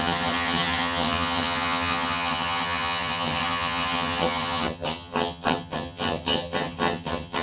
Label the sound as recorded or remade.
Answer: remade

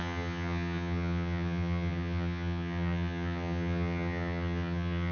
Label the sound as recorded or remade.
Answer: remade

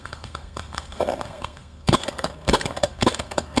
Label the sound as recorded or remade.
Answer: remade